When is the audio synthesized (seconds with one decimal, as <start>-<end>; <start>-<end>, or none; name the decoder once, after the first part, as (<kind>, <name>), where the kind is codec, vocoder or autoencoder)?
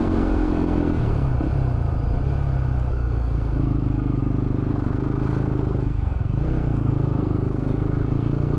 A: 0.0-1.3 (codec, SNAC); 2.9-4.2; 4.7-8.6